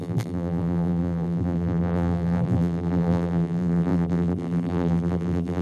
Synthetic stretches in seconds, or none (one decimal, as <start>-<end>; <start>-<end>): 0.0-5.6